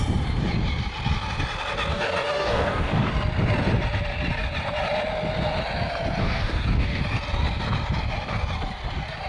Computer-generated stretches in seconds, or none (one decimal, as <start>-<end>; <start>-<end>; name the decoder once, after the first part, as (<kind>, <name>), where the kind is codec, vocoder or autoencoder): 1.9-3.1 (codec, DAC); 6.2-7.0